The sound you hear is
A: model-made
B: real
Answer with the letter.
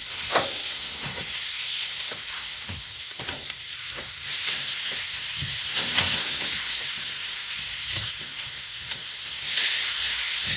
A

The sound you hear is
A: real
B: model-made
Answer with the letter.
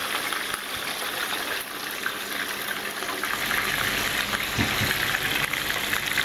A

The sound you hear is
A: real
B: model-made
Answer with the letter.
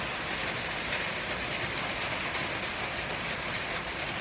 A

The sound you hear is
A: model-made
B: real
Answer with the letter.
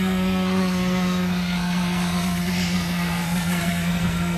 A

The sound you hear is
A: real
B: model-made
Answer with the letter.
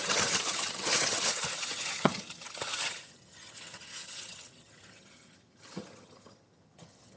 B